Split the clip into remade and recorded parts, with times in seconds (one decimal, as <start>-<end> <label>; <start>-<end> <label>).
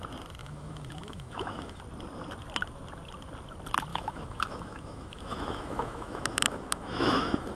0.0-0.4 recorded; 0.4-1.8 remade; 1.8-3.9 recorded; 3.9-7.6 remade